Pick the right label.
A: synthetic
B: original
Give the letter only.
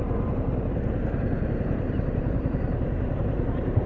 A